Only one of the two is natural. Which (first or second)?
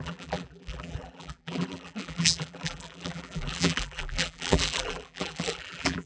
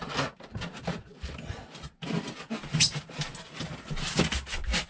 second